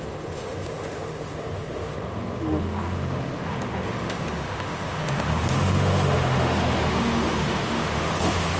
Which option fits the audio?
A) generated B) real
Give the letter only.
A